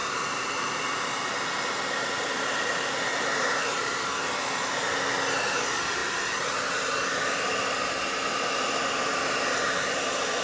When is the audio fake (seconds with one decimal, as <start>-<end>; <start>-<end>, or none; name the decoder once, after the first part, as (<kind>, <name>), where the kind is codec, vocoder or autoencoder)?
none